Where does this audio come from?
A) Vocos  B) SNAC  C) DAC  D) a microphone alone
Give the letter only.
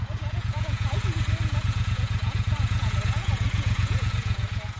A